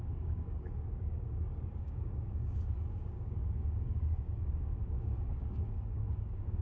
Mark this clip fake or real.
fake